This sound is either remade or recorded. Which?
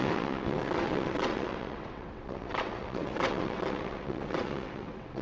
remade